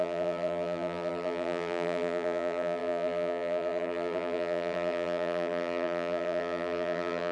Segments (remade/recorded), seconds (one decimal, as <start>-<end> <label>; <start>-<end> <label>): 0.0-7.3 remade